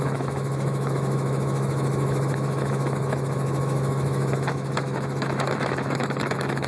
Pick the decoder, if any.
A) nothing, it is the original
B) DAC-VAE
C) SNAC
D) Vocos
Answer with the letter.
B